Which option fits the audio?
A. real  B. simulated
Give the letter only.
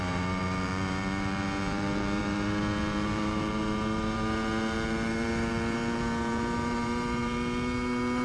B